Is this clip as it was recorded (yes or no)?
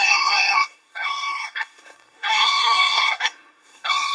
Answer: no